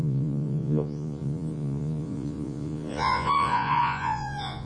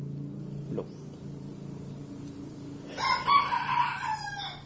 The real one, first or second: second